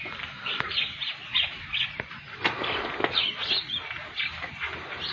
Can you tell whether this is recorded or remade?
recorded